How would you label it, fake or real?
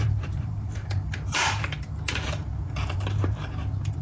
fake